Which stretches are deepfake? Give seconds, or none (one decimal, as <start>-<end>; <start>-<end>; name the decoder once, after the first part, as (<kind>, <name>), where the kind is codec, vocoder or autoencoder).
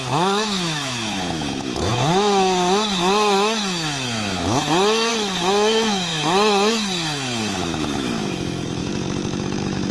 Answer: 0.0-9.9 (autoencoder, DAC-VAE)